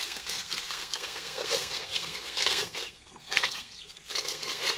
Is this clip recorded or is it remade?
remade